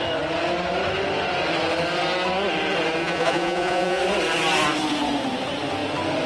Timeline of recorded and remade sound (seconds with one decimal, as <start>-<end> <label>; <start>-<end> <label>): 0.0-3.0 recorded; 3.0-4.0 remade; 4.0-6.3 recorded